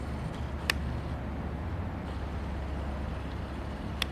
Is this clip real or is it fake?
real